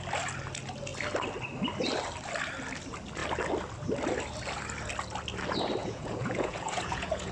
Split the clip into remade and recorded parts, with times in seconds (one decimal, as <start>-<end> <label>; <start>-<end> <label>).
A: 0.0-5.8 recorded; 5.8-7.3 remade